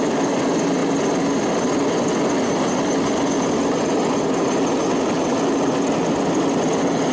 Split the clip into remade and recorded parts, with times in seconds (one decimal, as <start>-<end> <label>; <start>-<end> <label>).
0.0-7.1 recorded